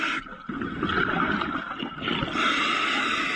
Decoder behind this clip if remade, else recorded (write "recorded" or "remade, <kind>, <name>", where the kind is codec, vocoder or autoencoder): recorded